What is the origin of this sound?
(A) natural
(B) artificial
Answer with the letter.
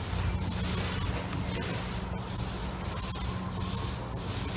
A